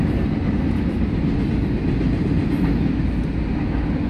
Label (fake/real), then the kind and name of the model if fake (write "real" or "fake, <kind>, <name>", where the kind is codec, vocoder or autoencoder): real